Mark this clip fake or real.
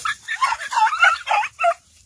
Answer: real